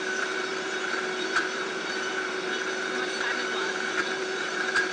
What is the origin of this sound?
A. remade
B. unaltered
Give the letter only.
A